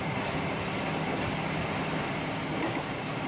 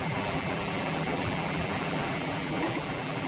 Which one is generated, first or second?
second